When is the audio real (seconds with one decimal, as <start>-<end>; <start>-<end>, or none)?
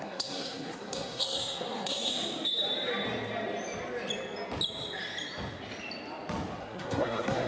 2.1-6.6